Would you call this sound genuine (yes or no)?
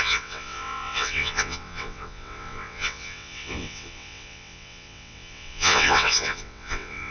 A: no